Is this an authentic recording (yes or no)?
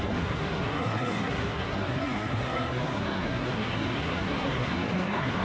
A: no